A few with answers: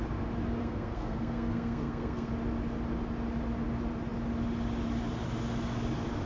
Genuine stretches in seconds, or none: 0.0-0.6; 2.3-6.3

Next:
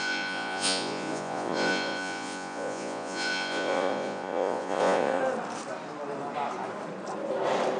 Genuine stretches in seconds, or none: 5.2-7.8

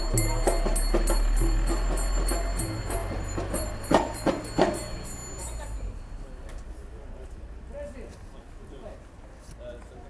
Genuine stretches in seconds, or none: 0.0-3.0; 4.3-10.1

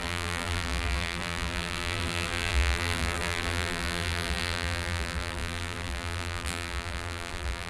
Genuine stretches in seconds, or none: none

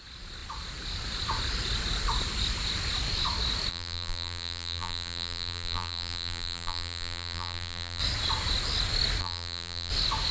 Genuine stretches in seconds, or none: 0.0-3.7; 8.0-9.2; 9.9-10.3

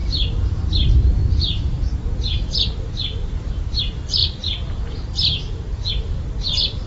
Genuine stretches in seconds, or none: 3.8-4.2; 5.9-6.9